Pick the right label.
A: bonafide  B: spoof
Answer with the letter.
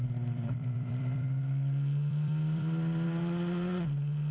B